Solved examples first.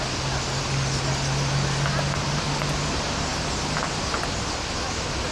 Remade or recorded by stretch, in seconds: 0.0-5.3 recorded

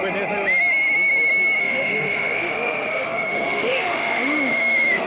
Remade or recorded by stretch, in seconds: 0.0-1.6 recorded; 1.6-5.1 remade

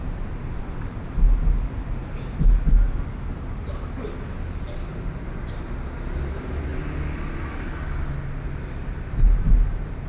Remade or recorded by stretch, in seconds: 0.0-10.1 recorded

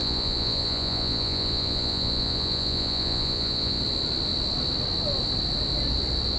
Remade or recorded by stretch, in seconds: 0.0-3.8 remade; 3.8-6.4 recorded

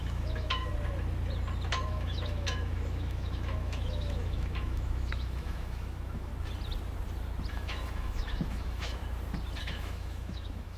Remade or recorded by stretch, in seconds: 0.0-0.7 remade; 0.7-1.9 recorded; 1.9-6.3 remade; 6.3-7.5 recorded; 7.5-9.0 remade; 9.0-9.6 recorded; 9.6-10.8 remade

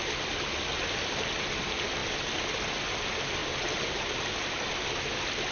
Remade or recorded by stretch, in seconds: 0.0-3.4 recorded; 3.4-4.4 remade; 4.4-5.5 recorded

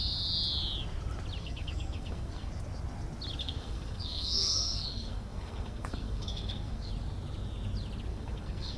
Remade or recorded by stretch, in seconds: 0.0-1.4 recorded; 1.4-2.5 remade; 2.5-3.4 recorded; 3.4-6.9 remade; 6.9-8.1 recorded; 8.1-8.8 remade